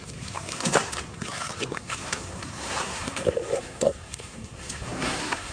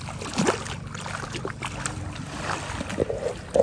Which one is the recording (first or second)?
second